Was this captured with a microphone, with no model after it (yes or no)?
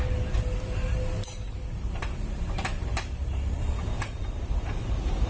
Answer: no